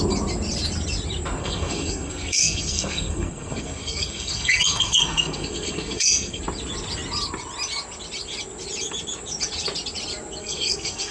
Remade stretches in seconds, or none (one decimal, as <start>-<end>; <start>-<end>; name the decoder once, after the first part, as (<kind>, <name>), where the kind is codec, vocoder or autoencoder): 1.4-6.4 (codec, SNAC); 10.4-11.1